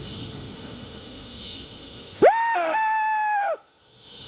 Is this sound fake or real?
fake